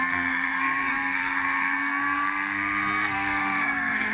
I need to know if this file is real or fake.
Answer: fake